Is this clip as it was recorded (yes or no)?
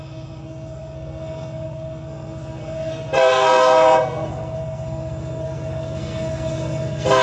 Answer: no